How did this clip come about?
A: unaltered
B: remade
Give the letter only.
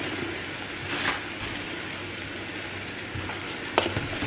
A